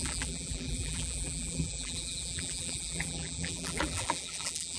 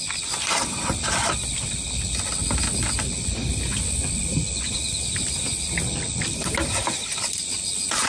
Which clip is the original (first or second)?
second